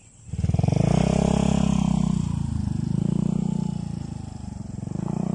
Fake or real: real